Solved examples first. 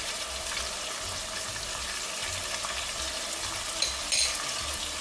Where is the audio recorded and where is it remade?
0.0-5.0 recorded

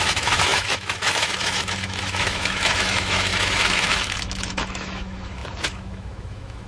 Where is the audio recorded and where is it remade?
0.0-6.7 remade

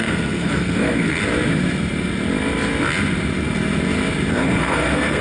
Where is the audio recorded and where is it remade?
0.0-1.2 remade; 1.2-4.3 recorded; 4.3-5.2 remade

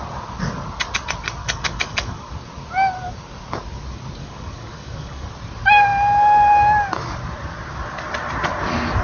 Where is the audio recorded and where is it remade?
0.0-1.4 recorded; 1.4-2.3 remade; 2.3-4.2 recorded; 4.2-5.3 remade; 5.3-9.0 recorded

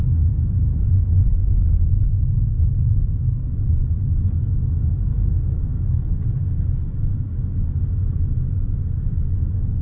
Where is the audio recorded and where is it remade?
0.0-5.1 recorded; 5.1-6.2 remade; 6.2-9.8 recorded